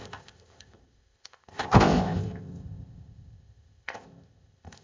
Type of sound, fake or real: fake